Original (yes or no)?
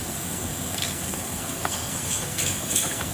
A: no